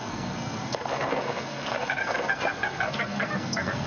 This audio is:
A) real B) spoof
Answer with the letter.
B